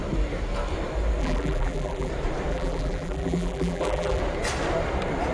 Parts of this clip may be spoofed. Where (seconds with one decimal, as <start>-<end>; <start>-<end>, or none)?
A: 1.2-2.1; 2.5-4.2